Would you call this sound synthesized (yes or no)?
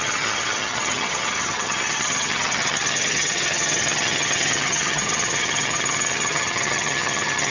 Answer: yes